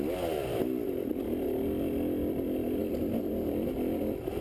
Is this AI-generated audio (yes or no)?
no